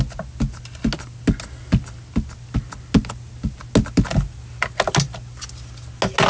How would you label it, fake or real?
real